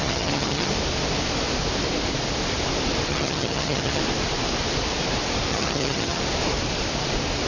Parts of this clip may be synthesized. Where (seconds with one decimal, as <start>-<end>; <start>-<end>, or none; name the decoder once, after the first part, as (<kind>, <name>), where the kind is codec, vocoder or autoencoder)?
0.0-0.7 (vocoder, HiFi-GAN); 3.1-4.0; 5.5-6.2